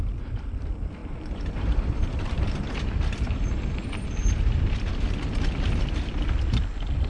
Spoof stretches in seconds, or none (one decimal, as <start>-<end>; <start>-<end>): 1.0-4.9